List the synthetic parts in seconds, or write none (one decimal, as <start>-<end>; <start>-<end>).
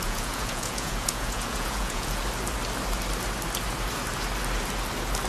0.0-2.2